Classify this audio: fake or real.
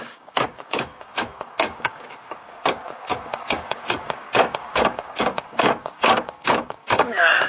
fake